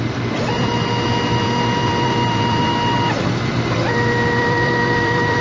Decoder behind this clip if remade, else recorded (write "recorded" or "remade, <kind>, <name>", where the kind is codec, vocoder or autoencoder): remade, vocoder, BigVGAN v2